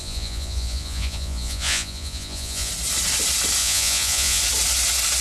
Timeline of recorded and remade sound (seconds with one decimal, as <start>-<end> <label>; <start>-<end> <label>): 0.0-2.7 remade; 2.7-3.6 recorded; 3.6-4.4 remade; 4.4-5.2 recorded